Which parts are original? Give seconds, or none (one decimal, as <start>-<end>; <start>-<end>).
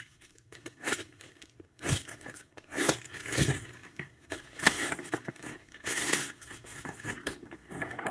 none